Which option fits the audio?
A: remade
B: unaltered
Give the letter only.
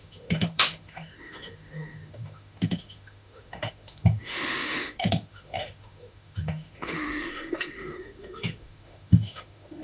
A